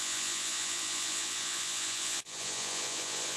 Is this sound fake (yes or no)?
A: yes